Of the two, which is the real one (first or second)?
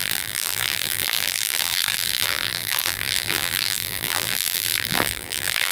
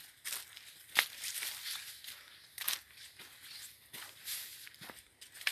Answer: second